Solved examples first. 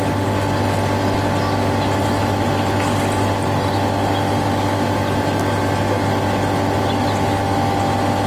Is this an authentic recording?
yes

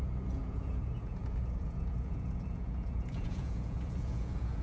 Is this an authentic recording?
no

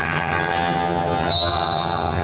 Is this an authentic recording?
no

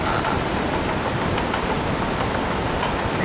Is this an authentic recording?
yes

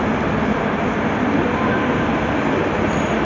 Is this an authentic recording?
yes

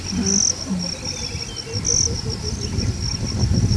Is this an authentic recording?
yes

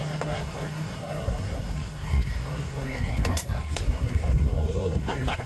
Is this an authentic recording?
no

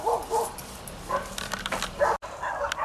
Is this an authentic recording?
yes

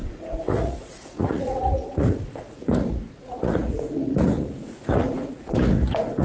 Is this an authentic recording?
no